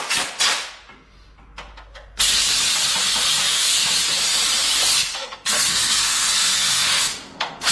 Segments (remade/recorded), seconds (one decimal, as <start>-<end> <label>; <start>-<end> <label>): 0.0-3.4 recorded; 3.4-3.9 remade; 3.9-5.1 recorded; 5.1-7.7 remade